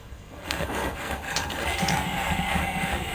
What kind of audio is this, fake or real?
fake